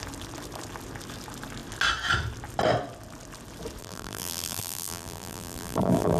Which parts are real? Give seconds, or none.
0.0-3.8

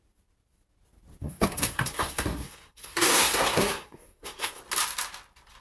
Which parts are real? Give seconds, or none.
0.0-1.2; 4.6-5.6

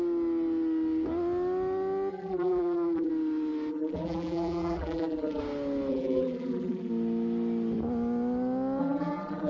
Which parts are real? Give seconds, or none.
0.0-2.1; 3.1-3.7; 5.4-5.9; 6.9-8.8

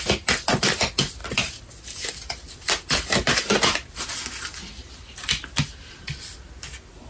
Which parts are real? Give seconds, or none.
0.0-7.1

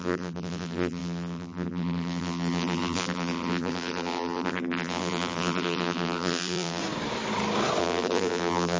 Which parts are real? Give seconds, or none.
6.8-7.8

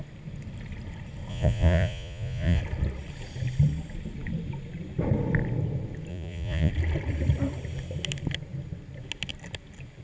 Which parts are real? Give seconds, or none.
0.0-1.3; 2.6-6.1; 6.7-10.0

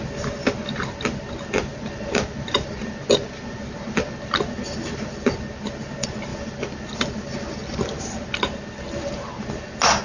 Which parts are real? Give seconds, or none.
0.0-1.7; 5.1-6.3; 8.0-10.0

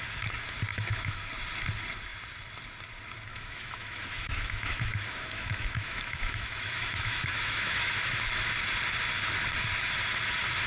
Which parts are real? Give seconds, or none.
0.0-0.7; 1.2-3.3; 8.1-10.7